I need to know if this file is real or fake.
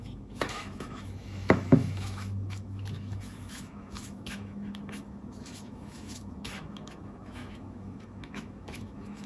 fake